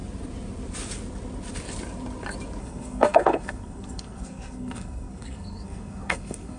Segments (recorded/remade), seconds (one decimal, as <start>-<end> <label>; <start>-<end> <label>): 0.0-2.6 recorded; 2.6-6.6 remade